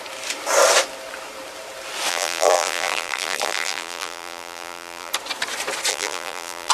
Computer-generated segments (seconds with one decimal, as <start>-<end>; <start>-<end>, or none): 2.1-5.1; 5.9-6.7